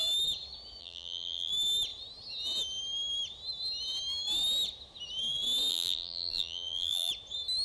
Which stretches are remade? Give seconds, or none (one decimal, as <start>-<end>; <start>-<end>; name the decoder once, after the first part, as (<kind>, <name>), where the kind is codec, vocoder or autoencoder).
0.8-1.5 (vocoder, BigVGAN v2); 5.7-7.1